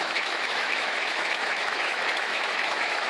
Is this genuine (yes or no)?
no